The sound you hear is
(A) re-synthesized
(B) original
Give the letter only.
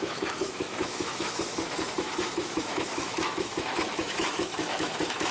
A